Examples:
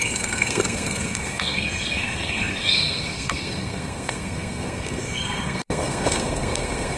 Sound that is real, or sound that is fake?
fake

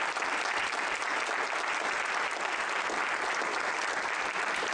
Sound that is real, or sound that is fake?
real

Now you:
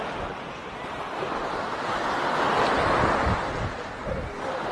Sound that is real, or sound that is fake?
real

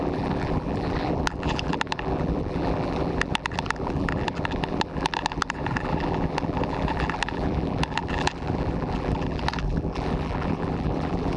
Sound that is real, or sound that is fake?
fake